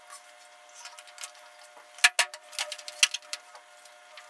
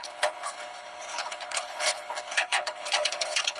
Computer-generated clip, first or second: second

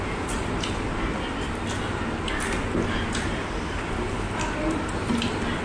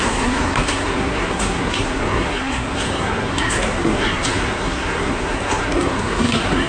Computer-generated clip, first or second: second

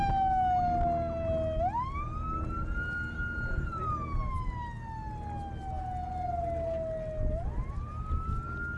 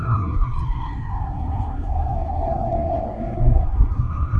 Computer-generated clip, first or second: second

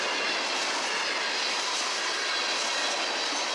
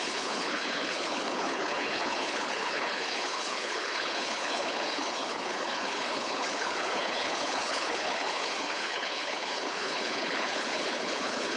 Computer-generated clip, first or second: second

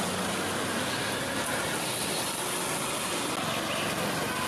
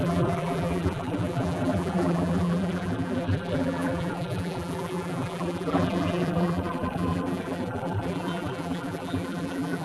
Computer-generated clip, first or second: second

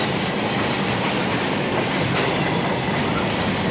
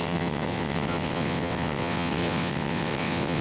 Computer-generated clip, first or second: second